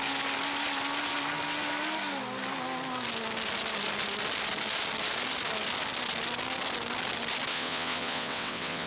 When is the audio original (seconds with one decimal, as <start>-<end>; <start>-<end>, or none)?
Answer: 0.0-7.5